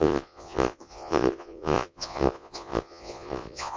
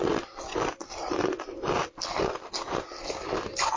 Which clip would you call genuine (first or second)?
second